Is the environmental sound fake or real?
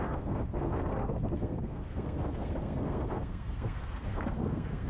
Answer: fake